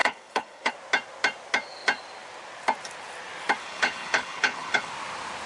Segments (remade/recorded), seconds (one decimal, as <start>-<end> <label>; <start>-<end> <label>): 0.0-0.7 remade; 0.7-3.6 recorded; 3.6-4.9 remade; 4.9-5.5 recorded